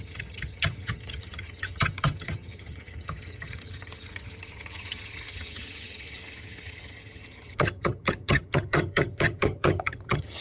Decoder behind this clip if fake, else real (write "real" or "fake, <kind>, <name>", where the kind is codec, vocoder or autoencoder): fake, vocoder, HiFi-GAN